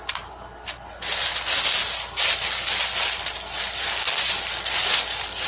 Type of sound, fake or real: real